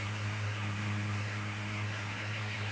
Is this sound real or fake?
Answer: fake